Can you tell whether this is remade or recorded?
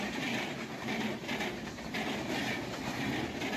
recorded